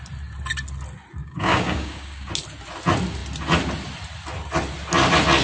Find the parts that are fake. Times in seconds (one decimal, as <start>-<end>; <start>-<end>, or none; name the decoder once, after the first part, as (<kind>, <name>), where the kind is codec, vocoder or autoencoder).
1.2-2.3 (codec, DAC)